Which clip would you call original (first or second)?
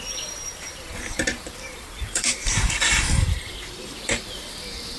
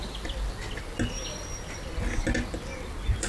second